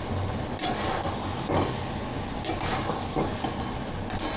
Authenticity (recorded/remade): recorded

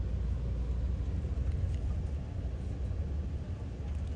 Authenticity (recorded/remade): recorded